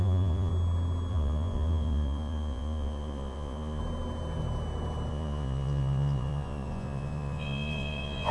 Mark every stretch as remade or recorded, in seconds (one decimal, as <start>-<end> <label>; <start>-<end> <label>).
0.0-0.5 remade; 0.5-1.1 recorded; 1.1-3.8 remade; 3.8-5.1 recorded; 5.1-8.3 remade

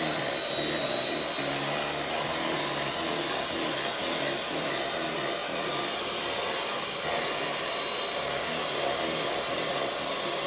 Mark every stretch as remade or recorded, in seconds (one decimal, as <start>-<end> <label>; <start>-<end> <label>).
0.0-10.5 recorded

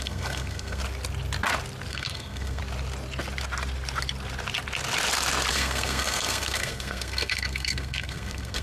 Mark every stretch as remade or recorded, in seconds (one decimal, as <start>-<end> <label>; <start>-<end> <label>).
0.0-0.8 remade; 0.8-1.9 recorded; 1.9-2.6 remade; 2.6-5.5 recorded; 5.5-8.6 remade

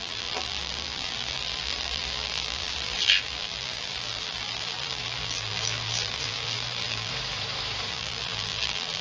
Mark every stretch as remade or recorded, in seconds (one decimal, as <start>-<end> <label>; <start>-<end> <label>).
0.0-7.1 remade; 7.1-7.9 recorded; 7.9-9.0 remade